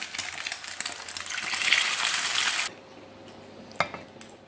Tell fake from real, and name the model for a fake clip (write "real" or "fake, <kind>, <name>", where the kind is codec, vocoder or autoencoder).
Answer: real